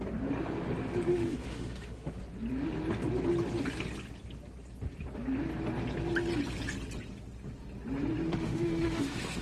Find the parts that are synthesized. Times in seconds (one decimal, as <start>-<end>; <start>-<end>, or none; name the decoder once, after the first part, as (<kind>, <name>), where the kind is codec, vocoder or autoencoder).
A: 1.1-2.2 (autoencoder, DAC-VAE); 8.3-9.4